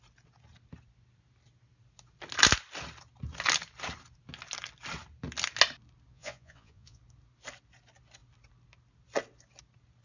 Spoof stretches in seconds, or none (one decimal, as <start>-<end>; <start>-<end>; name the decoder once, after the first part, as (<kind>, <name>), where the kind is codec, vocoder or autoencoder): 6.1-7.0 (vocoder, Vocos)